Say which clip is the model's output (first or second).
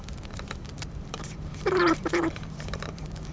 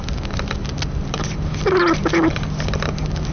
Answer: first